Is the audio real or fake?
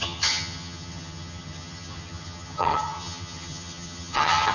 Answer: fake